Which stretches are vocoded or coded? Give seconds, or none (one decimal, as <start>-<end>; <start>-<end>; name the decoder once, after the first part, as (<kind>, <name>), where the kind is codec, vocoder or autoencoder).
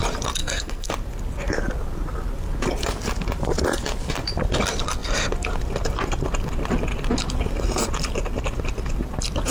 0.4-0.9 (codec, SNAC)